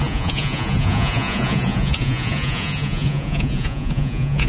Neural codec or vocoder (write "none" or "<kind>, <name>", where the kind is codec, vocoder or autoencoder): vocoder, Vocos